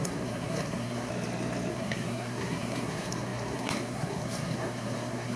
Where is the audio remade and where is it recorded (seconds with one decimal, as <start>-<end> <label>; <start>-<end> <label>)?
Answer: 0.0-1.1 remade; 1.1-1.7 recorded; 1.7-5.4 remade